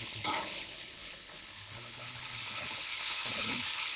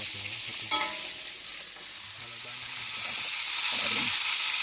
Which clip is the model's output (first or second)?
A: first